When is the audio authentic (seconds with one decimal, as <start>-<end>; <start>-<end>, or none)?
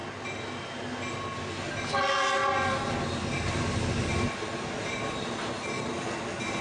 0.0-6.6